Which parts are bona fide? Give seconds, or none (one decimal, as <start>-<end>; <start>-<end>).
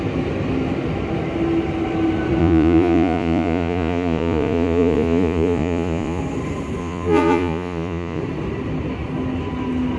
0.0-2.4; 6.2-6.8; 8.2-10.0